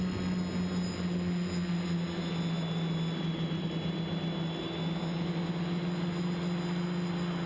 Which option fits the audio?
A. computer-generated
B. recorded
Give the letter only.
B